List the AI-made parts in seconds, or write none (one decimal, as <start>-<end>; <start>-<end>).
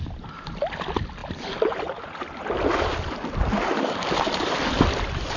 none